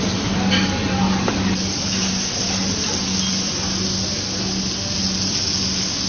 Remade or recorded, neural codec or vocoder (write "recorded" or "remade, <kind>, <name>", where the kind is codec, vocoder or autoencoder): recorded